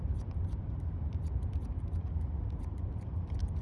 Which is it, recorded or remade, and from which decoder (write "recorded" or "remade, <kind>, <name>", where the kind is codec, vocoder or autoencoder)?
remade, vocoder, BigVGAN v2